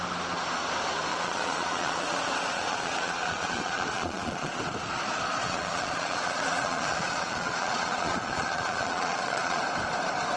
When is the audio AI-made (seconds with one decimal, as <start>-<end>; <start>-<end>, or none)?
1.1-4.6; 5.4-9.6